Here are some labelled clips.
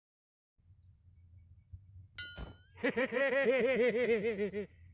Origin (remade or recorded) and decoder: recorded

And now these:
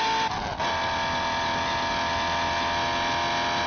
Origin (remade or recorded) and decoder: recorded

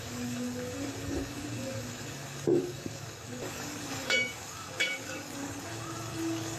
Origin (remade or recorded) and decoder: remade, codec, DAC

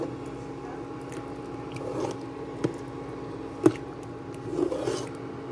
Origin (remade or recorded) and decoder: recorded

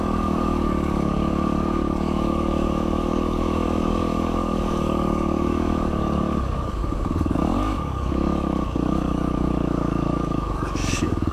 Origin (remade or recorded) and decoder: remade, codec, DAC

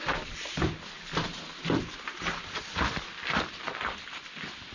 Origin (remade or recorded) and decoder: recorded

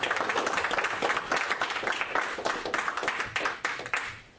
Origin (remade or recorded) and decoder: recorded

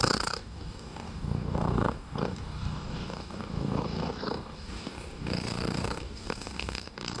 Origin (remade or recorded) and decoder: remade, codec, DAC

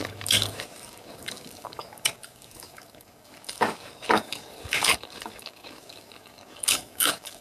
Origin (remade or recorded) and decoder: remade, codec, DAC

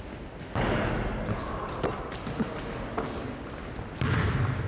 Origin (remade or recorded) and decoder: recorded